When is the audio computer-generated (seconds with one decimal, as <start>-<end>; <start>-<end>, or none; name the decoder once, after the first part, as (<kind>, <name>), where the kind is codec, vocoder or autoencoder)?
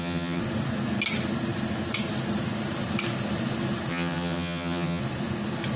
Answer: 0.0-0.4 (vocoder, HiFi-GAN); 3.9-5.0